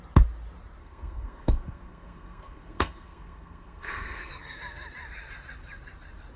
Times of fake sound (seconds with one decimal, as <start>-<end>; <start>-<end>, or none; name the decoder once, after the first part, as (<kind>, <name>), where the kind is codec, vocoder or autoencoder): 0.8-4.3 (codec, SNAC)